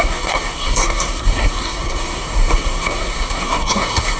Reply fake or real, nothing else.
fake